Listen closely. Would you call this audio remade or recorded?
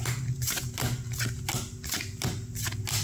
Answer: recorded